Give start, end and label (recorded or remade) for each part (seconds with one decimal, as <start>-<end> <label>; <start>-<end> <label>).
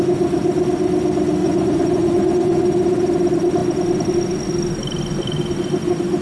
0.0-1.4 recorded; 1.4-2.6 remade; 2.6-6.2 recorded